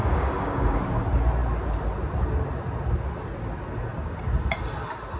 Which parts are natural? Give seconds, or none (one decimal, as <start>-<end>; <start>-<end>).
0.8-5.2